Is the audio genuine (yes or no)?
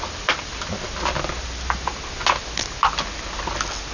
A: yes